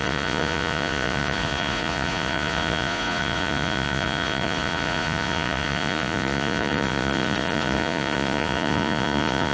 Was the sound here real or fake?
fake